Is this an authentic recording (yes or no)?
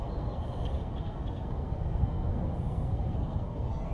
no